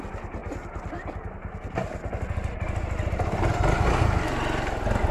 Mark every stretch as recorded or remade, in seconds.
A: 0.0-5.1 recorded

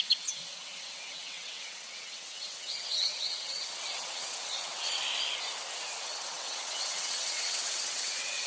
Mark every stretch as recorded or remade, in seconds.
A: 0.0-5.0 remade; 5.0-6.0 recorded; 6.0-8.5 remade

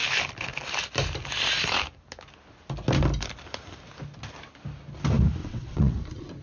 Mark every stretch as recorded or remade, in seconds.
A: 0.0-5.4 recorded; 5.4-6.0 remade; 6.0-6.4 recorded

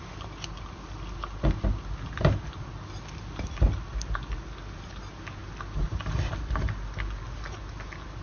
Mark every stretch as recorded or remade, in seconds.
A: 0.0-8.2 recorded

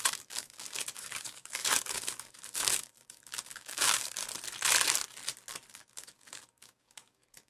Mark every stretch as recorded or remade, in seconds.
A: 0.0-4.2 remade; 4.2-5.7 recorded; 5.7-7.5 remade